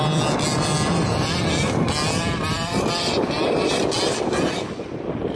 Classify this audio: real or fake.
real